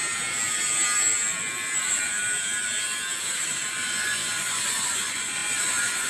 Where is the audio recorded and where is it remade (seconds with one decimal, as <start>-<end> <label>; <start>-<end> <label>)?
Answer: 0.0-3.7 recorded; 3.7-6.1 remade